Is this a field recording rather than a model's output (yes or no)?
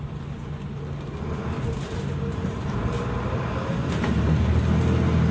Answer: yes